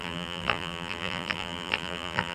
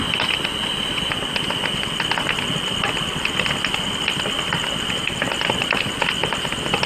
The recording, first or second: second